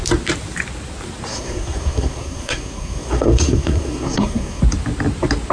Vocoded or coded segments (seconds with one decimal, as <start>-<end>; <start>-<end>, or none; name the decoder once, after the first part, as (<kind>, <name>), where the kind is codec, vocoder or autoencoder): 1.3-4.6 (codec, SNAC)